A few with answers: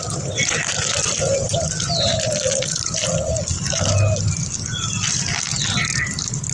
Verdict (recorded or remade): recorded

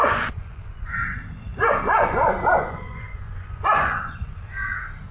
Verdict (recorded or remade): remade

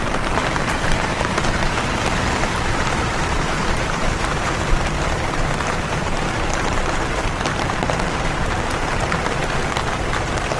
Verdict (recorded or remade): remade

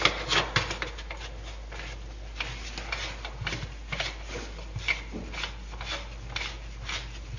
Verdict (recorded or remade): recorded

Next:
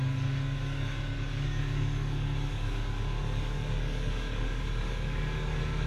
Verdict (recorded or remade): remade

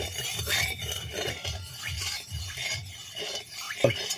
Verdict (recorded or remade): recorded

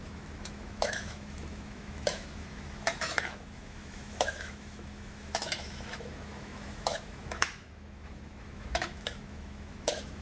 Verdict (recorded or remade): remade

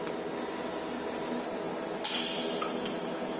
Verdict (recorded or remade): recorded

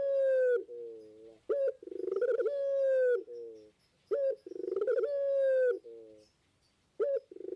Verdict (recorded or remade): recorded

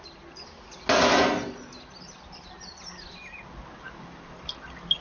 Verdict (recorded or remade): recorded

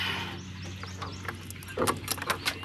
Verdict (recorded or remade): recorded